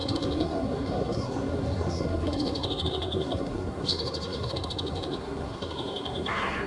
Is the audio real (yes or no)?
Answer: no